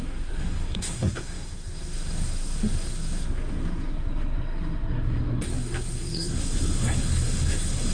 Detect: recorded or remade remade